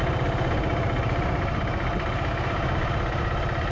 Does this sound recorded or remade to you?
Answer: recorded